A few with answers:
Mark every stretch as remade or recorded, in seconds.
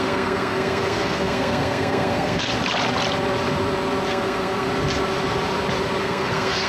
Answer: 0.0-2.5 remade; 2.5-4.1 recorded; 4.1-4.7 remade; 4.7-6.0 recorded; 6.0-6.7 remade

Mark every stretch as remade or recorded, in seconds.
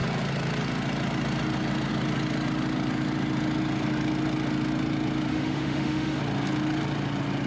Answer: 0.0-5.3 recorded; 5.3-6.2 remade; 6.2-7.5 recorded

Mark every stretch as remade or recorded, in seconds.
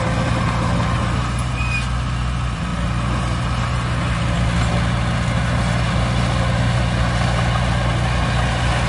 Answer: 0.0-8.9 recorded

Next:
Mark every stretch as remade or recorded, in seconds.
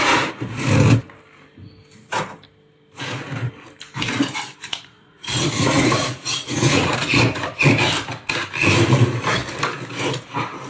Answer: 0.0-4.7 recorded; 4.7-7.2 remade; 7.2-10.7 recorded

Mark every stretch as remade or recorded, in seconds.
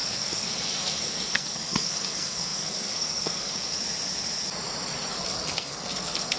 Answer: 0.0-3.8 remade; 3.8-5.1 recorded; 5.1-6.4 remade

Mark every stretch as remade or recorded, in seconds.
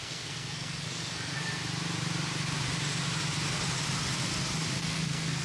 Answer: 0.0-1.6 remade; 1.6-4.8 recorded; 4.8-5.4 remade